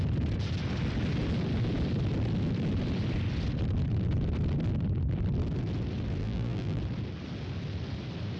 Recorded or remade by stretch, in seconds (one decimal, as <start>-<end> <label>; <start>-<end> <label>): 0.0-6.2 recorded; 6.2-6.8 remade; 6.8-8.4 recorded